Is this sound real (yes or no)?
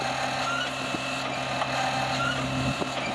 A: yes